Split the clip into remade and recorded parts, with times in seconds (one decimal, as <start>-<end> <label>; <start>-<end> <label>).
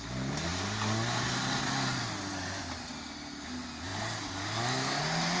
0.0-5.4 recorded